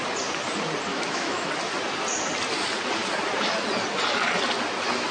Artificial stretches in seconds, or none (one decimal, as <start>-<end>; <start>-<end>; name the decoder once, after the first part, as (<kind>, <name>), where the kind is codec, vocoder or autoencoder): 0.9-1.5 (autoencoder, DAC-VAE)